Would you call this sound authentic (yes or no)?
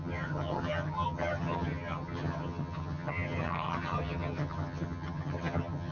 no